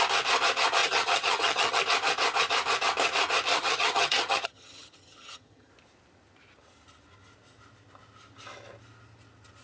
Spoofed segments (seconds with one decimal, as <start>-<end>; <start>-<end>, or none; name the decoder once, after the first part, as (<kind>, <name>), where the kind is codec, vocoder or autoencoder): 0.8-1.8 (vocoder, HiFi-GAN); 3.5-5.7